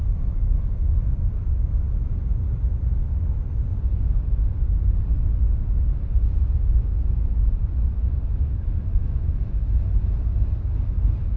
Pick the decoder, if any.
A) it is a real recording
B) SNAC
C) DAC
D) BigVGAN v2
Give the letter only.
A